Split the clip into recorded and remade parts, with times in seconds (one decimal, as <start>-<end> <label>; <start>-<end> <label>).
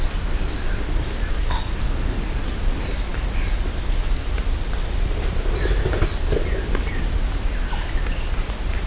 0.0-8.9 recorded